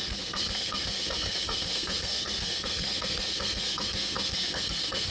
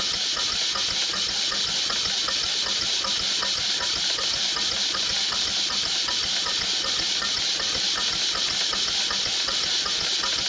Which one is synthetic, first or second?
first